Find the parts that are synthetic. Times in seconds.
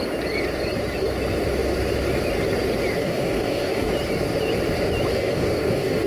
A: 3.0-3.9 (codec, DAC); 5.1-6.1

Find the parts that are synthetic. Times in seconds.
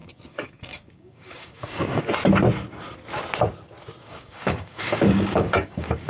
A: 0.0-2.0 (codec, DAC); 4.0-6.1